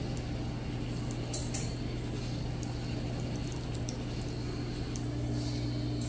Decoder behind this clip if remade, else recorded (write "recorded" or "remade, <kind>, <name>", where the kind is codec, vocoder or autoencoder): recorded